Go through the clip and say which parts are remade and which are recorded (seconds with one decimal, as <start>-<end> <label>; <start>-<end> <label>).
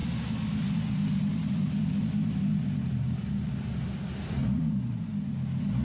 0.0-3.5 remade; 3.5-4.4 recorded; 4.4-4.9 remade; 4.9-5.8 recorded